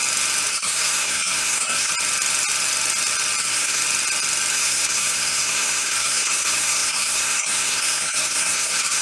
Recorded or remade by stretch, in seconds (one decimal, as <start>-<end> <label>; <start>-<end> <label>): 0.0-0.5 recorded; 0.5-1.9 remade; 1.9-3.4 recorded; 3.4-3.8 remade; 3.8-4.5 recorded; 4.5-9.0 remade